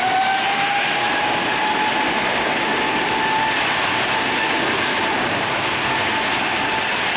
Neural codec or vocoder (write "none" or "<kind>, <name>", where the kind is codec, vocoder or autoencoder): none